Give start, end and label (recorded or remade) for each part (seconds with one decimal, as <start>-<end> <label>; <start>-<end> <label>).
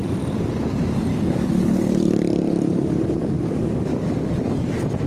0.0-1.1 recorded; 1.1-2.2 remade; 2.2-3.2 recorded; 3.2-4.4 remade; 4.4-5.1 recorded